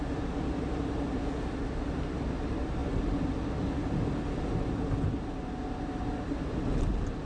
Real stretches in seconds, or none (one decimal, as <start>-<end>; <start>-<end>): 0.0-7.3